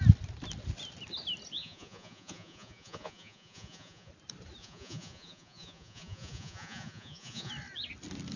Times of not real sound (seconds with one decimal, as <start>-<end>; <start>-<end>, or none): 1.6-4.1; 4.6-7.5